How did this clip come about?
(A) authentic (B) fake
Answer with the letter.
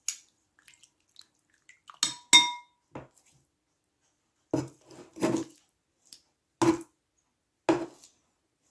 A